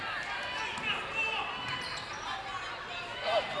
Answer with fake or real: real